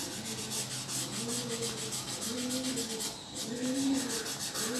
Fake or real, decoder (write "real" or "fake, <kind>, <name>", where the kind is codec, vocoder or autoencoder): real